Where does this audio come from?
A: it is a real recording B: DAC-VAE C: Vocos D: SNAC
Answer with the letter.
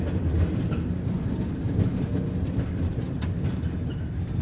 A